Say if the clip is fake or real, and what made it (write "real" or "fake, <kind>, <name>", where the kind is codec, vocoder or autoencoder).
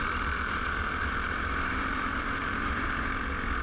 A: fake, vocoder, BigVGAN v2